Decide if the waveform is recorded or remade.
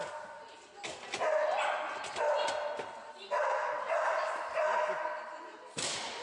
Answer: recorded